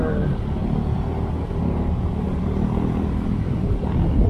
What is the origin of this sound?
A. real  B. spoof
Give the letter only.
A